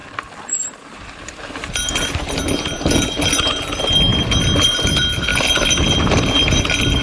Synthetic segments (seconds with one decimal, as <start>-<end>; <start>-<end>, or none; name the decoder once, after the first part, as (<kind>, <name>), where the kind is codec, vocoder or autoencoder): 0.0-1.5 (vocoder, BigVGAN v2); 4.1-4.8; 5.3-6.2